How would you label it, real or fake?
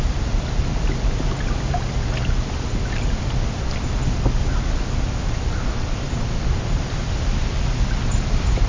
real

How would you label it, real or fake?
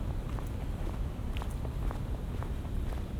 real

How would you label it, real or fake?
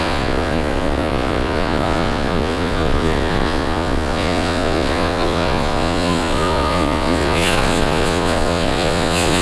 fake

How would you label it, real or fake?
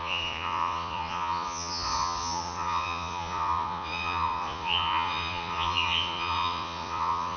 fake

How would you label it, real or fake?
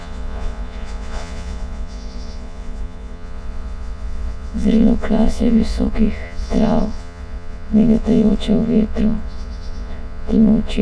fake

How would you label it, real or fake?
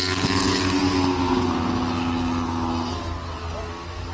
real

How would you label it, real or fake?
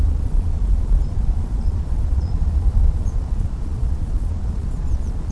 fake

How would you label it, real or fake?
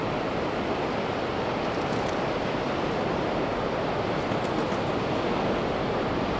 real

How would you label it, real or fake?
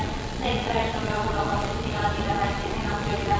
fake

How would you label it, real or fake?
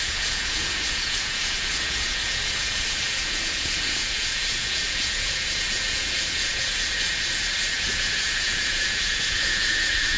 fake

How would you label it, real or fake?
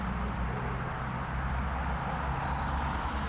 real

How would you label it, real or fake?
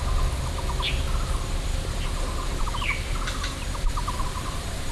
real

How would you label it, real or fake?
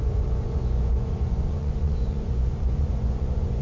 fake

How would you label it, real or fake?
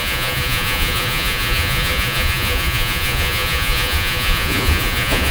fake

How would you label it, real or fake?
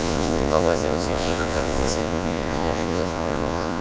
fake